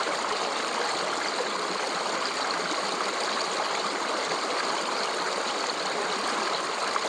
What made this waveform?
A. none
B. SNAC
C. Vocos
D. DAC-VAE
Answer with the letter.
A